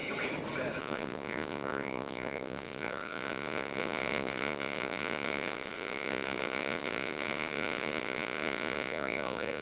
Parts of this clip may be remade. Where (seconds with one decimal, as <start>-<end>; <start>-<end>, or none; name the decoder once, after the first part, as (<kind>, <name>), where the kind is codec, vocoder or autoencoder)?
0.8-9.6 (vocoder, Vocos)